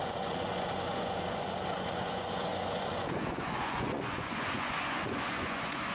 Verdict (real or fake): fake